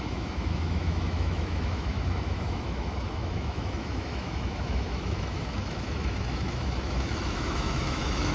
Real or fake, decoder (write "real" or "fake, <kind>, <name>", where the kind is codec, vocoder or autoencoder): fake, autoencoder, DAC-VAE